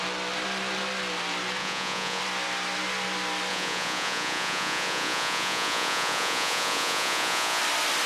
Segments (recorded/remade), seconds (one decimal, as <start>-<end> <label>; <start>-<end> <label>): 0.0-1.6 recorded; 1.6-2.2 remade; 2.2-3.5 recorded; 3.5-7.6 remade; 7.6-8.1 recorded